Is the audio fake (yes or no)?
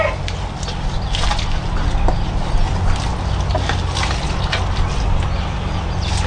no